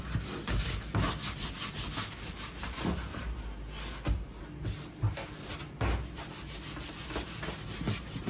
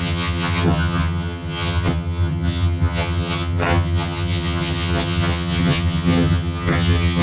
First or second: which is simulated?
second